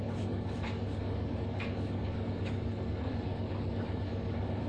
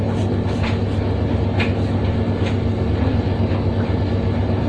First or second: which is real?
second